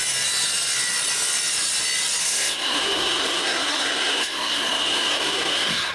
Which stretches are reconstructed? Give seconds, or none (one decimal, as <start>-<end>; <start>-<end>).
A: 2.2-5.9

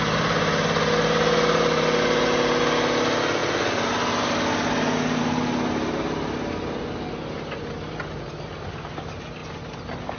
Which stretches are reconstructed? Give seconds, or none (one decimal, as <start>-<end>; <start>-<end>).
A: none

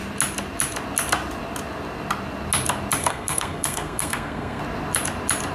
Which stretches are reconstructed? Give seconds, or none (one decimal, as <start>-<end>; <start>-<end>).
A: 3.0-4.6

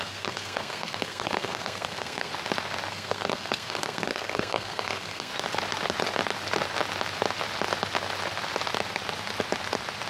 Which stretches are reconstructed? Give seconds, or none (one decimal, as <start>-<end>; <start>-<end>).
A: 0.0-2.3; 2.9-5.3